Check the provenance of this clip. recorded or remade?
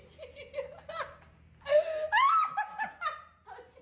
recorded